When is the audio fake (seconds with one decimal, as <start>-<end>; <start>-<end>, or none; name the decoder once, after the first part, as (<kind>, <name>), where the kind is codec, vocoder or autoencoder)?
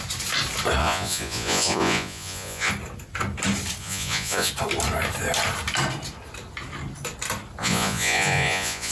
0.8-2.7 (vocoder, Vocos); 3.8-4.5; 7.6-8.9